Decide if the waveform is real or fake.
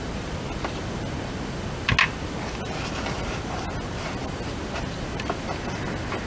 real